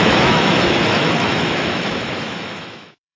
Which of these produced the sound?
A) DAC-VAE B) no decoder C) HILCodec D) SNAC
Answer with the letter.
A